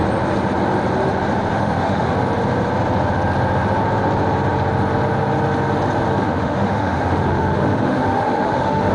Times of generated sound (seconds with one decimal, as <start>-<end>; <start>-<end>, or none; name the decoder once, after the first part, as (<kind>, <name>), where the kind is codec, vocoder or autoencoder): 1.5-2.1 (autoencoder, DAC-VAE); 6.2-8.9

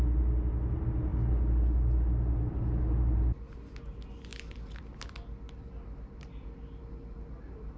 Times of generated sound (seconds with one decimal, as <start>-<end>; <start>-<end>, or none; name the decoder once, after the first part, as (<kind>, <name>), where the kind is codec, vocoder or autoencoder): none

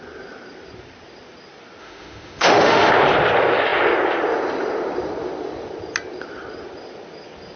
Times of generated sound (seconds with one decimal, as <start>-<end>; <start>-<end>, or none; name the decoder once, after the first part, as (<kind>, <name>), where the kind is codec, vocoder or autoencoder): 1.8-2.9 (autoencoder, DAC-VAE)

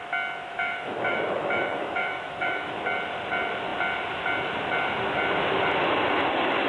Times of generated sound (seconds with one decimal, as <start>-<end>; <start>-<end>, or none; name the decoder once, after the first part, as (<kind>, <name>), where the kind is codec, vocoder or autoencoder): 0.5-2.8 (autoencoder, DAC-VAE)

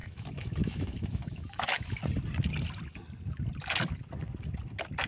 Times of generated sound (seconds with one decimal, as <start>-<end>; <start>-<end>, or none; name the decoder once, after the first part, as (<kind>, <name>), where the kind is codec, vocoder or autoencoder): 0.0-2.0 (autoencoder, DAC-VAE)